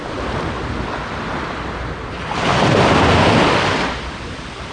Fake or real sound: real